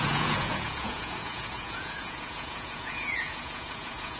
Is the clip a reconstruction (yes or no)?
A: yes